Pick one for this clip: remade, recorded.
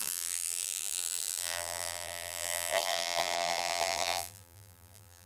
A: remade